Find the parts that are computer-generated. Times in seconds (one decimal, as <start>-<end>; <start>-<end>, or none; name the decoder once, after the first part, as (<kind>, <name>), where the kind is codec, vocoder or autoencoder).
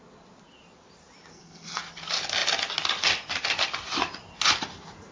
1.3-1.8 (codec, SNAC)